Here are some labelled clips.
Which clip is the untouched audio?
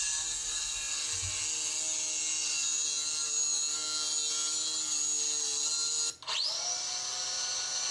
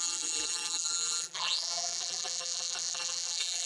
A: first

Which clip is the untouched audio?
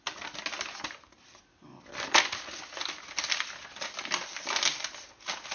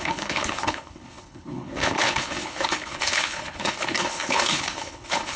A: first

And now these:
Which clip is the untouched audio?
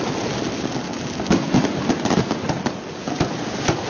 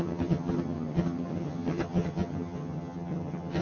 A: first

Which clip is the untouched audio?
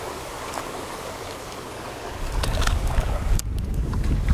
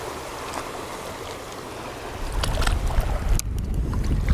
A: second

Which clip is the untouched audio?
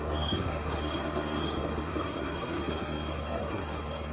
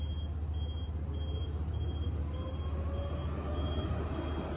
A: second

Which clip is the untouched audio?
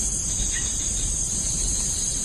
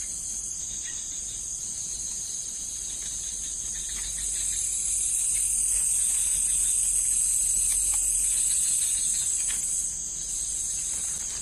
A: second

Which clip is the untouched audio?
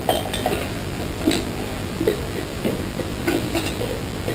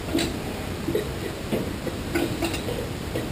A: second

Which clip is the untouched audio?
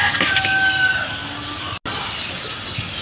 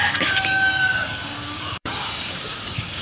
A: first